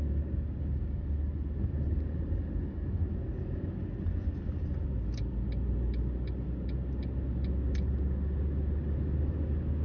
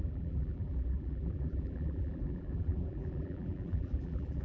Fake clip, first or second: second